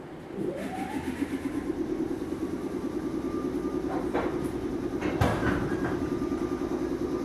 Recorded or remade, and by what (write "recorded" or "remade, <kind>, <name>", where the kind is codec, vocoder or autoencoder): remade, vocoder, BigVGAN v2